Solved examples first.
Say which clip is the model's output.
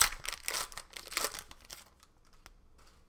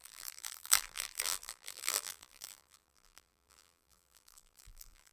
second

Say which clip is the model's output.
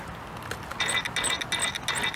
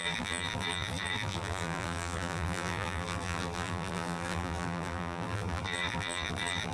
second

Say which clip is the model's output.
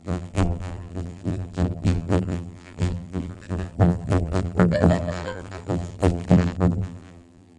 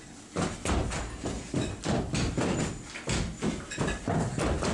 first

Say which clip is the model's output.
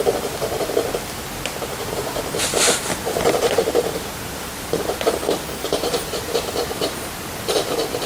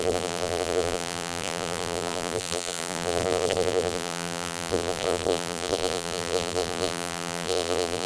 second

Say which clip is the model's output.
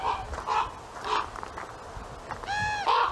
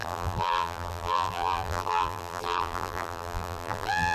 second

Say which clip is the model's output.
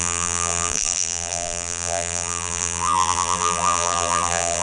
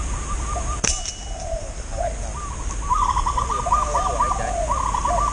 first